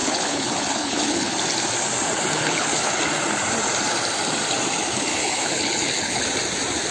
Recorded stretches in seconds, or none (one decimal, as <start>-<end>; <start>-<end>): 1.3-2.4; 2.9-5.1; 6.2-6.9